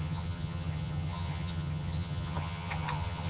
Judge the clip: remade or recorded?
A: remade